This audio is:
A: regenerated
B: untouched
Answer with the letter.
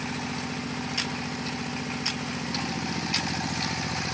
B